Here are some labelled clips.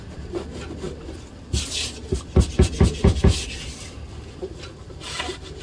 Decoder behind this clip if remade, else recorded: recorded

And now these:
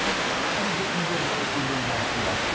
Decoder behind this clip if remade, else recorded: remade, autoencoder, DAC-VAE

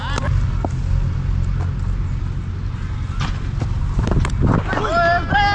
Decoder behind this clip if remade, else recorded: recorded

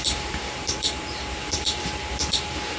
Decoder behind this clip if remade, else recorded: remade, vocoder, BigVGAN v2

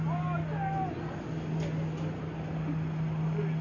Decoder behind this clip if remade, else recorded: recorded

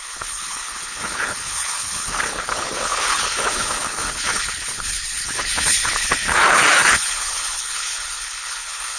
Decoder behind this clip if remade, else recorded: remade, codec, HILCodec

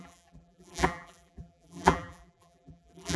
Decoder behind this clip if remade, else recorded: remade, vocoder, BigVGAN v2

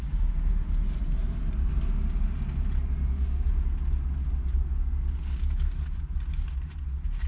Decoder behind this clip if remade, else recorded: recorded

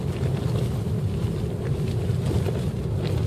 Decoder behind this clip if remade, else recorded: recorded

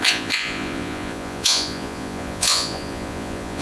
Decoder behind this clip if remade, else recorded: remade, vocoder, Vocos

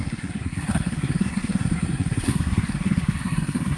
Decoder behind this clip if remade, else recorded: remade, codec, SNAC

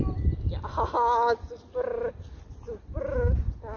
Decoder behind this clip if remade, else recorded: recorded